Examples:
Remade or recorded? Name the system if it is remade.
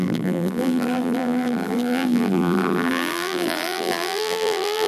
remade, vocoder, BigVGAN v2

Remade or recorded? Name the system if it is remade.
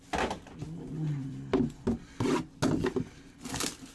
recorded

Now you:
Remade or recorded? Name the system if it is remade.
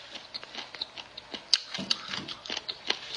recorded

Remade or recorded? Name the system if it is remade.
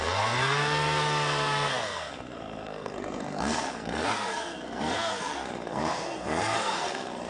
remade, codec, SNAC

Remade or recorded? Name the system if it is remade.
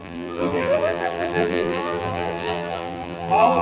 remade, vocoder, BigVGAN v2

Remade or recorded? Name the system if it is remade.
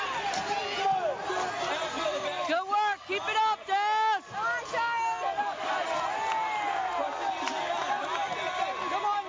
recorded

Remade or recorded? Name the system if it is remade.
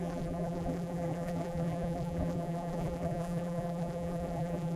remade, vocoder, BigVGAN v2